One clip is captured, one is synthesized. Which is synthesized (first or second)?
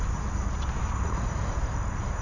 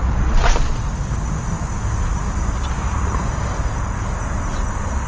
first